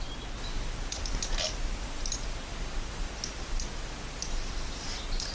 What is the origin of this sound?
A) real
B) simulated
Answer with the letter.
A